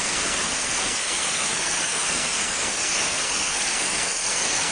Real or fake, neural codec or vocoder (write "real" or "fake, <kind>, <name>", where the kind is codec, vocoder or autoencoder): fake, codec, SNAC